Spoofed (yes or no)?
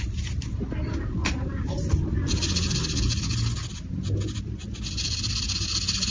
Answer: no